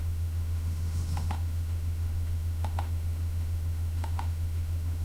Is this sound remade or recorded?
remade